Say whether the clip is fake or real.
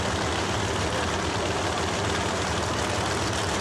real